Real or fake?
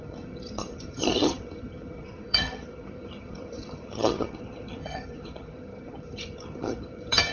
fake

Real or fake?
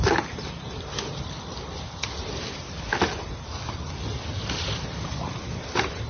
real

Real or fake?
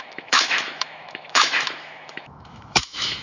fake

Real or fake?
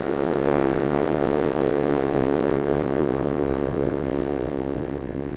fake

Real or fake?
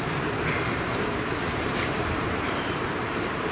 fake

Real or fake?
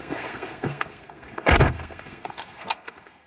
fake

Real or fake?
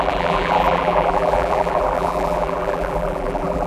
fake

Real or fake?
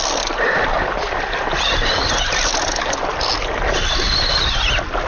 real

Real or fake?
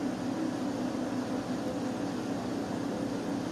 real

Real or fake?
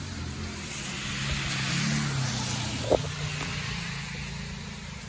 real